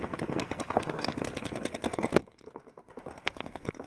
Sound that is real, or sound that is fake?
fake